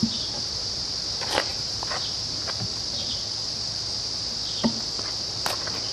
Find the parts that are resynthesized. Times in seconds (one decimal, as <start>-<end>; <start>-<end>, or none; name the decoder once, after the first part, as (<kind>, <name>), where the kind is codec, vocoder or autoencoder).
0.0-0.8 (vocoder, BigVGAN v2); 1.5-2.7